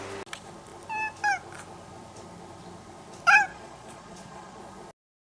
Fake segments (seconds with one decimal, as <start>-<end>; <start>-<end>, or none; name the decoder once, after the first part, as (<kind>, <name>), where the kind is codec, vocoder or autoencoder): 3.5-4.6 (vocoder, Vocos)